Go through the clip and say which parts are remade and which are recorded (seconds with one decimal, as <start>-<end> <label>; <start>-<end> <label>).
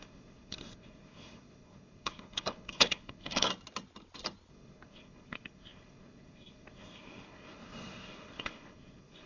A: 0.0-3.5 remade; 3.5-4.5 recorded; 4.5-9.3 remade